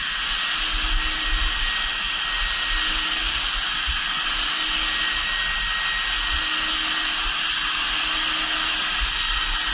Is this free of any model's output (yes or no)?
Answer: yes